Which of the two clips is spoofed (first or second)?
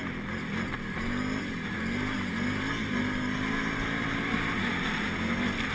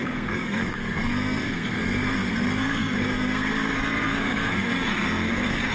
second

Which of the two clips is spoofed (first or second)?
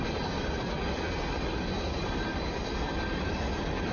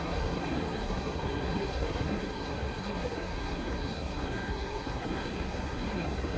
second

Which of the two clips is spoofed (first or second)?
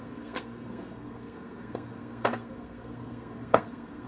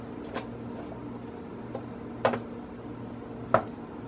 first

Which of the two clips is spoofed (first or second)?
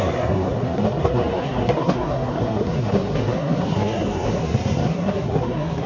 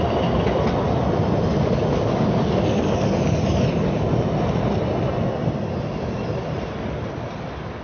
first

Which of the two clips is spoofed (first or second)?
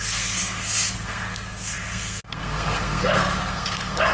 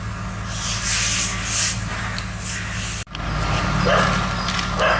first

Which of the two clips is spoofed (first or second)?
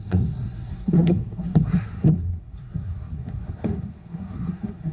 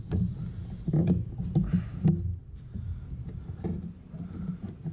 first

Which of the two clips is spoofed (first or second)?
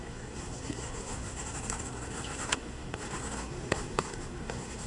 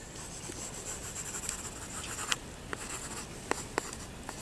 first